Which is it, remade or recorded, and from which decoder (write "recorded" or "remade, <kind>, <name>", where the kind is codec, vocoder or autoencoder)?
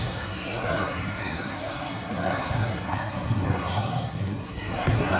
remade, codec, SNAC